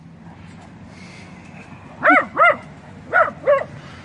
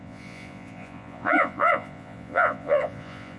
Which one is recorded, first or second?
first